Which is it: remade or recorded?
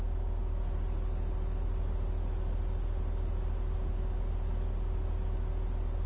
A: recorded